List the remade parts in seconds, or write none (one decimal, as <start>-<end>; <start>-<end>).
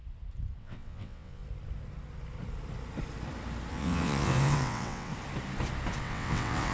0.6-1.4; 3.7-5.1; 6.0-6.7